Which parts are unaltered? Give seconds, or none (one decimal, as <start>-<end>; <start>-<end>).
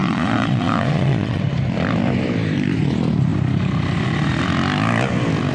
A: 1.4-5.5